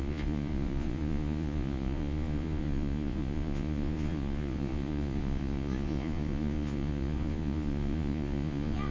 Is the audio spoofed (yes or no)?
yes